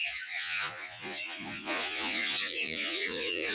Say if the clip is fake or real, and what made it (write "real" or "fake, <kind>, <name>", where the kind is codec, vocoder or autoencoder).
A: fake, vocoder, Vocos